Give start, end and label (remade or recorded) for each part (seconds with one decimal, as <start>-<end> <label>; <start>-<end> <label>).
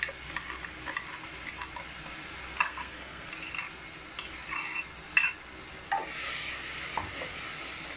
0.0-2.7 recorded; 2.7-3.3 remade; 3.3-8.0 recorded